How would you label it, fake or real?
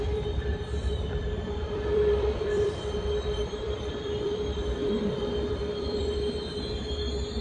fake